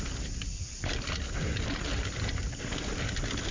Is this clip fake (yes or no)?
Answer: no